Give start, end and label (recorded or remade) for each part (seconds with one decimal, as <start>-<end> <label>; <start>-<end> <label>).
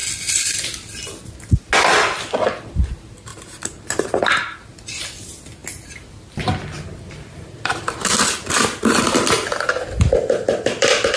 0.0-3.3 recorded; 3.3-4.2 remade; 4.2-11.2 recorded